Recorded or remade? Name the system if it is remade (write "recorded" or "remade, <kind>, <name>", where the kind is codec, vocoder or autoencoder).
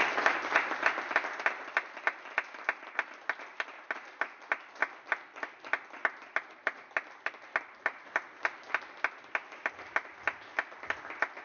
recorded